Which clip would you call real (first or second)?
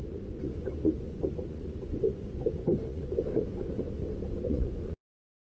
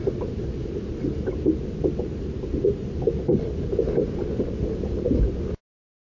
second